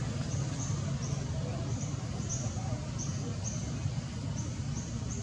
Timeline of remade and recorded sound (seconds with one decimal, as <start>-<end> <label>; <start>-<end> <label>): 0.0-5.2 recorded